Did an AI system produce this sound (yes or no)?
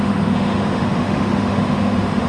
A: yes